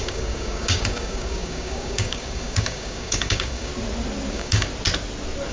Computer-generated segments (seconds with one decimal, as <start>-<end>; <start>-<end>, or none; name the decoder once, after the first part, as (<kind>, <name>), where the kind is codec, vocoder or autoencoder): 0.0-3.7 (codec, DAC); 4.3-4.7